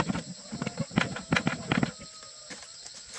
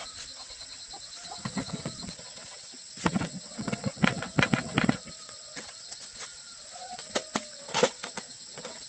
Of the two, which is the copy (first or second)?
second